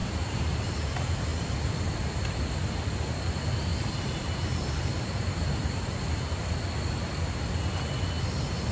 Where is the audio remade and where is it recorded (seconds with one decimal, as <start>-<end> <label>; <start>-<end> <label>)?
0.0-0.7 remade; 0.7-1.3 recorded; 1.3-1.9 remade; 1.9-3.7 recorded; 3.7-6.4 remade; 6.4-8.7 recorded